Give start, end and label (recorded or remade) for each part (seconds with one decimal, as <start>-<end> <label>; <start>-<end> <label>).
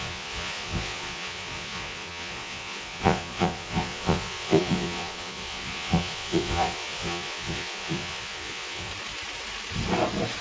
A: 0.0-8.9 remade; 8.9-10.4 recorded